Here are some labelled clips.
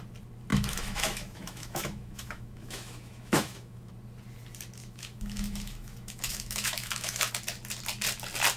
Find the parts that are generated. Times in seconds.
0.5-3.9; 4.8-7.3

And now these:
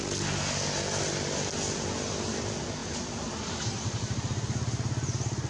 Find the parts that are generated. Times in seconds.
none

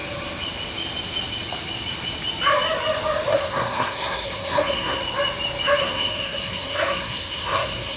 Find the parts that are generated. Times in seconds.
3.3-5.0; 5.8-8.0

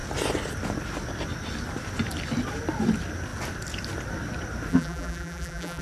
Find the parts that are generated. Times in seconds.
4.7-5.8